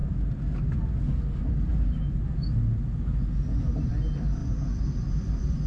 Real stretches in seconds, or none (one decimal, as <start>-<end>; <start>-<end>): 0.0-5.7